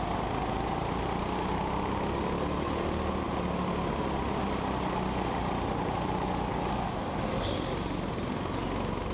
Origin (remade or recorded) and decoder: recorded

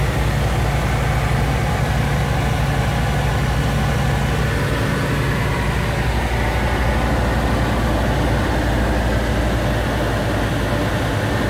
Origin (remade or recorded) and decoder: recorded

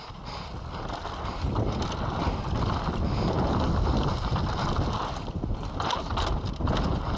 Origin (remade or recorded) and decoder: recorded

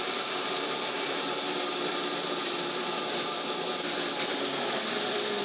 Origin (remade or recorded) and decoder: remade, vocoder, BigVGAN v2